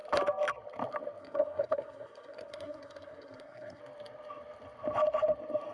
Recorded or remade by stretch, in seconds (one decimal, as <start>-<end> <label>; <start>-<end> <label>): 0.0-1.2 recorded; 1.2-3.8 remade; 3.8-5.7 recorded